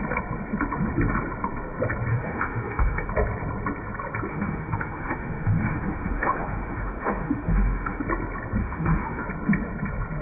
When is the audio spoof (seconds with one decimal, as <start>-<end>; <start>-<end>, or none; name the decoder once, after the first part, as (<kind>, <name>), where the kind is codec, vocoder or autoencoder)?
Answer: 2.1-3.1 (autoencoder, DAC-VAE); 4.3-8.0; 8.6-9.2